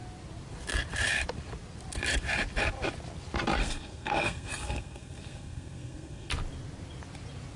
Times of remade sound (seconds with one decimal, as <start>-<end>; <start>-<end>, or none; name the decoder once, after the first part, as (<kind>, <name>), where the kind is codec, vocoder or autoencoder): 3.6-6.3 (codec, SNAC)